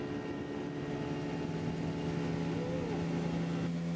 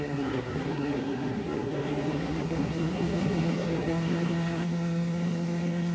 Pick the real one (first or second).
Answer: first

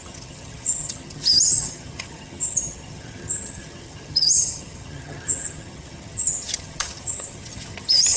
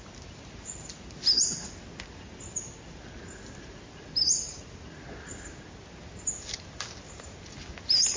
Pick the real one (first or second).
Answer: second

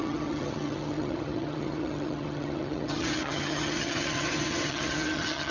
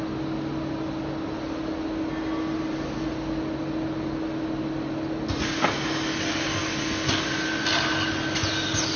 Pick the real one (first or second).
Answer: second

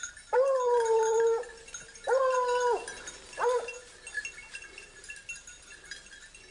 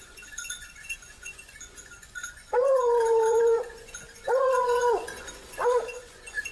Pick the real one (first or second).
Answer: first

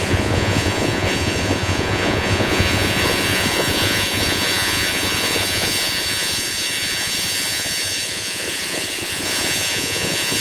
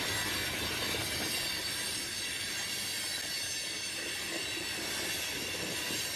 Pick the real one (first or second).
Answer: second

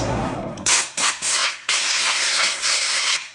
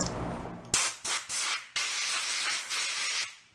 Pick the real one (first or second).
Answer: second